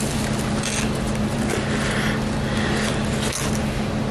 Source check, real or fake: real